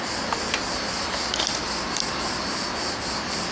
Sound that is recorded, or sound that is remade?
recorded